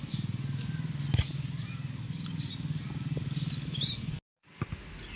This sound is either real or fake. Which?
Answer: real